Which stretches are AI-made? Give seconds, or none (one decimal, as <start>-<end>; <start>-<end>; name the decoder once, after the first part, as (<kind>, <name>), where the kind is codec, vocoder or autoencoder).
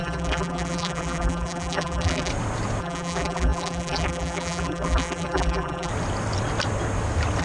0.0-2.3 (vocoder, BigVGAN v2); 2.8-5.9